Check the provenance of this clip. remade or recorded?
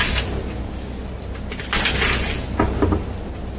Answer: recorded